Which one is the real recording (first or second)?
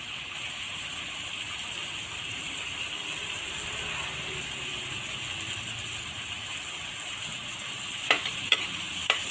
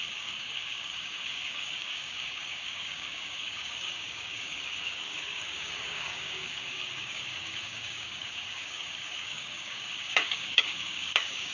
first